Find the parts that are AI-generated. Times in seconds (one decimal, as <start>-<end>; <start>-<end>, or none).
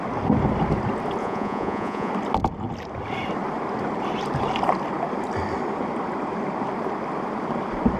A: 1.2-2.1